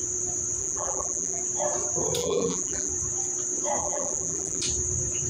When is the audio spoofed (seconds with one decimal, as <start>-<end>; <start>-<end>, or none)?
0.6-1.4; 2.2-2.9; 3.8-4.6

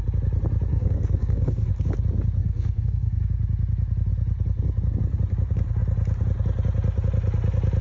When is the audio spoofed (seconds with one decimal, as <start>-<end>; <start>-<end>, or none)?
0.7-1.7; 2.4-3.2

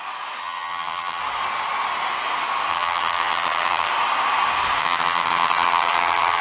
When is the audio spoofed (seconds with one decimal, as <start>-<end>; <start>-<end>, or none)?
0.4-1.2; 2.7-3.9; 4.8-6.4

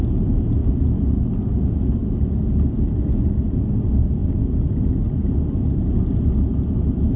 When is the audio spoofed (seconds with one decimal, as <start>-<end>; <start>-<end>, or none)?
0.6-1.2

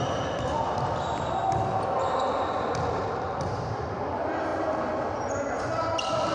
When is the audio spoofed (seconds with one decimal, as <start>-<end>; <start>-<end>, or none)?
none

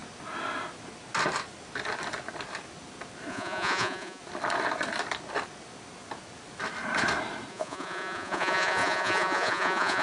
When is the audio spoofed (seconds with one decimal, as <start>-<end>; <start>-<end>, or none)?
3.3-4.2; 7.5-10.0